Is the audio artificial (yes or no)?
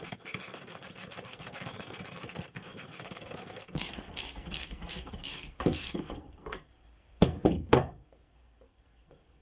yes